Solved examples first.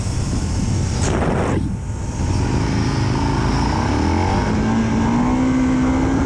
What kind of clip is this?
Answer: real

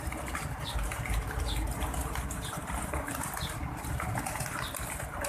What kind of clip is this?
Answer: real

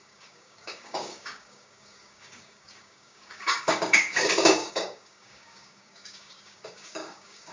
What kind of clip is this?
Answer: fake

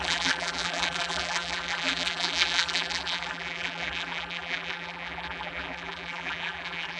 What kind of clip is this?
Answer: fake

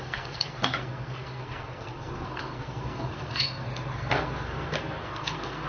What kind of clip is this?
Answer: fake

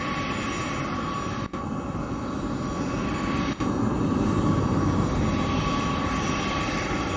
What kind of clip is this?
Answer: real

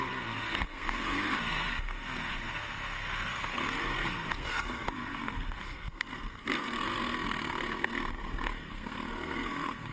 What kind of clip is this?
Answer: fake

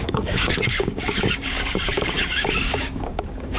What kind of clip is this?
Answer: fake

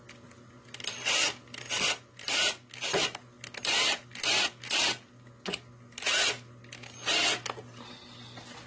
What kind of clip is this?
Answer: real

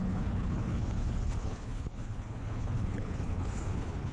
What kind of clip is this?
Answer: fake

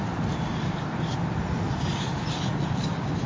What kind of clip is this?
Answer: fake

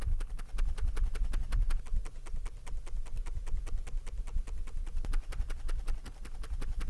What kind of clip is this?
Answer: real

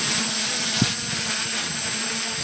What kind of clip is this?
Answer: real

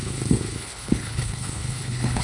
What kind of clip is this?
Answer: fake